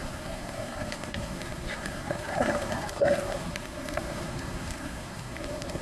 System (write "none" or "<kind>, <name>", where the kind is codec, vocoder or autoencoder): codec, SNAC